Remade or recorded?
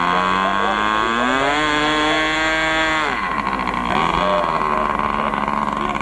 recorded